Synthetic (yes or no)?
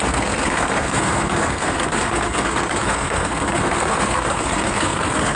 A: yes